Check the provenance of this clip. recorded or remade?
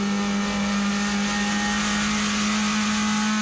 recorded